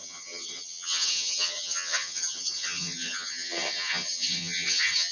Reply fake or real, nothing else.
fake